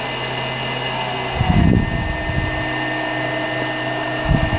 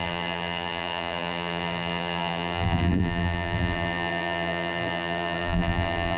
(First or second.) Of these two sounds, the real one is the first